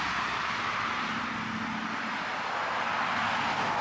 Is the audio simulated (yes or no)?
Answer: no